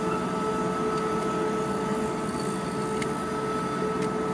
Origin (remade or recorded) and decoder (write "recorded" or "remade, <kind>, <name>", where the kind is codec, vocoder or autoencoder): recorded